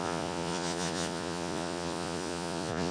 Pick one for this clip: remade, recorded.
remade